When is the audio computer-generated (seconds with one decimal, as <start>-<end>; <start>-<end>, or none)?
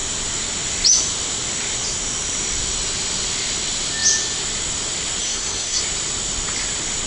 5.2-5.8